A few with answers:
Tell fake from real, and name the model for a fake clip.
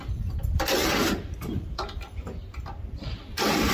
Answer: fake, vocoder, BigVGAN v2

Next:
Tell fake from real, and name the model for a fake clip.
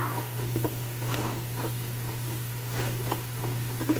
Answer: fake, codec, DAC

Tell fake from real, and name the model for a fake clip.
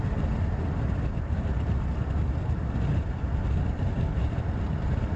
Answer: real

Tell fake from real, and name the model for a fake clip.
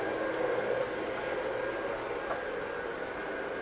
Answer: real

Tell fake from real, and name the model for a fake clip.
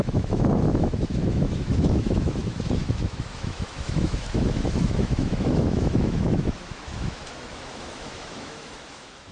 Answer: fake, autoencoder, DAC-VAE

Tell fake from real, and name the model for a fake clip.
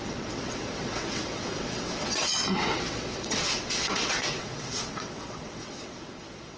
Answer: fake, vocoder, WaveNeXt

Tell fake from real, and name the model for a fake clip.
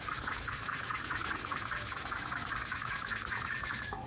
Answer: fake, codec, DAC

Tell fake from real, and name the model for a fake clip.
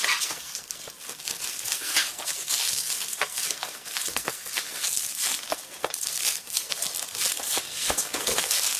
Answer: fake, codec, SNAC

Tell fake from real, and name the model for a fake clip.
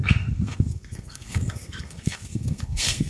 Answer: fake, codec, SNAC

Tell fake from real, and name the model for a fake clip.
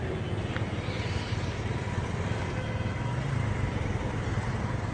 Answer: real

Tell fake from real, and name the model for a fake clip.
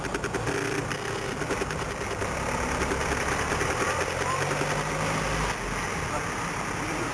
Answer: real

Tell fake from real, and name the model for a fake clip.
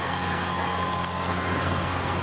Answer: fake, codec, SNAC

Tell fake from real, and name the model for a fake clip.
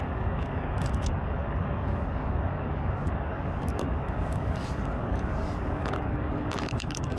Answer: fake, codec, DAC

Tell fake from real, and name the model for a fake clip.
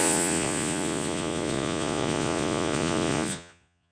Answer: fake, vocoder, Vocos